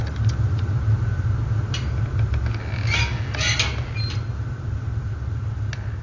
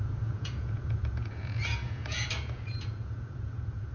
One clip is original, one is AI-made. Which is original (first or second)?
first